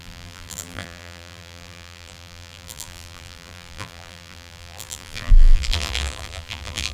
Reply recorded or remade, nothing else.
remade